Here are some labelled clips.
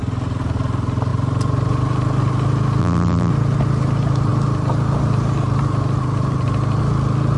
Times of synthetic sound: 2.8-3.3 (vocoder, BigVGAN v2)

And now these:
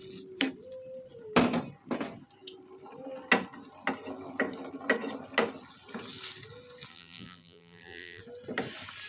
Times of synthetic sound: 6.9-8.2 (vocoder, BigVGAN v2)

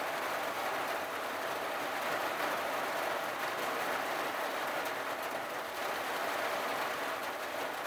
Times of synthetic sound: none

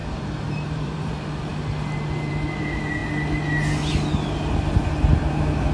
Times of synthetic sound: 0.0-1.1 (vocoder, BigVGAN v2)

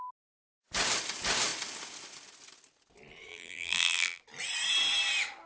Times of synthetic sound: 3.3-4.2 (vocoder, BigVGAN v2)

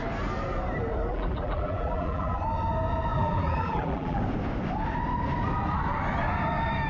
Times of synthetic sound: 1.1-2.4 (vocoder, BigVGAN v2); 3.1-4.2